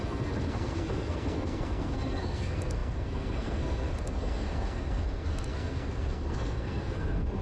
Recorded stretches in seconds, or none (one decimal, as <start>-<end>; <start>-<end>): none